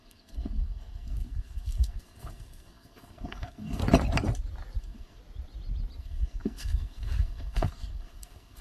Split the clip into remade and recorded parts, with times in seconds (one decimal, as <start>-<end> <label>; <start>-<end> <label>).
0.0-3.8 remade; 3.8-4.8 recorded; 4.8-5.2 remade; 5.2-6.0 recorded; 6.0-8.6 remade